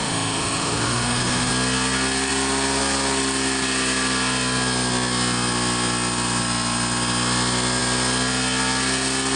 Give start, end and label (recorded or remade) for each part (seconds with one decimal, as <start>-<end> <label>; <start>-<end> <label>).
0.0-1.5 remade; 1.5-9.4 recorded